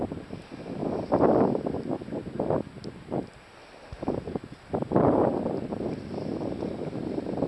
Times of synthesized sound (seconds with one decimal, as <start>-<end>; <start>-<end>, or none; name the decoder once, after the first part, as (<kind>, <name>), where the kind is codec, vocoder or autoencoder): none

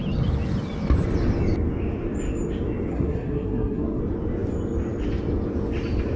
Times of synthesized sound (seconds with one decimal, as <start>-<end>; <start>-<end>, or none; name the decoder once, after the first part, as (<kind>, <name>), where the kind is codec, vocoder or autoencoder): 2.9-4.0 (codec, SNAC)

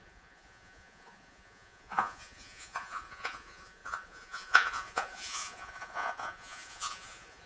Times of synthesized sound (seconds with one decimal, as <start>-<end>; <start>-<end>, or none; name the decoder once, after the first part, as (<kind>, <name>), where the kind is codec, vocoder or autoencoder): 0.0-7.5 (vocoder, Vocos)

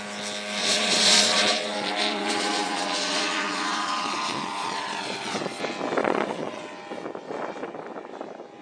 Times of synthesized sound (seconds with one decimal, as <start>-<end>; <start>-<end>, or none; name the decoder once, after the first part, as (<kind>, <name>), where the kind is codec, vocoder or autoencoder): 0.6-5.6 (vocoder, Vocos); 6.0-6.6

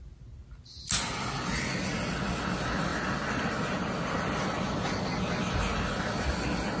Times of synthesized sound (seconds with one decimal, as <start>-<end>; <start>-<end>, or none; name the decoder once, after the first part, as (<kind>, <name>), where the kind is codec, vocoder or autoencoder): none